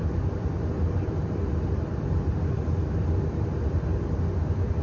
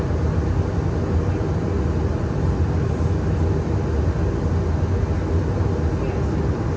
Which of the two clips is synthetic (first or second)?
first